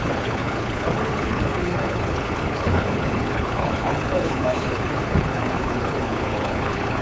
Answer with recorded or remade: remade